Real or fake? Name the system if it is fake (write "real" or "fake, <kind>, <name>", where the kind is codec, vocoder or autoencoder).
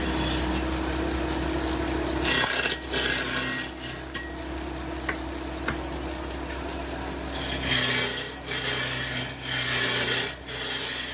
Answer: real